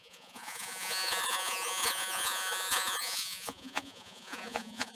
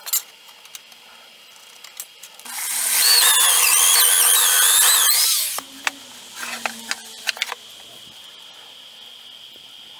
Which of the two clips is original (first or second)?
second